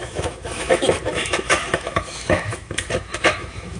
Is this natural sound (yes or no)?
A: no